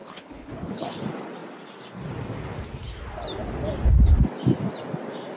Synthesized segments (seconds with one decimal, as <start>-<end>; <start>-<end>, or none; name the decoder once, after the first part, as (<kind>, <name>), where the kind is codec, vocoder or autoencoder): 0.0-1.0 (codec, HILCodec)